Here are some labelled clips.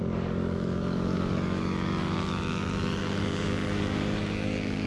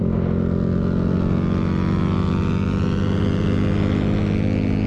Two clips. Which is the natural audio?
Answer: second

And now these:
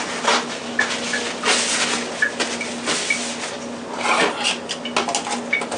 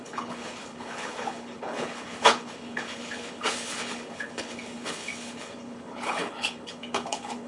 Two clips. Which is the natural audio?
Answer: first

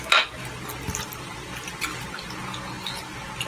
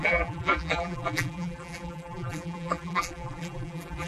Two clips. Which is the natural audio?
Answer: first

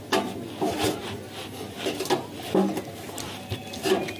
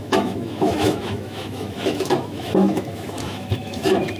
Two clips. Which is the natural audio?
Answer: first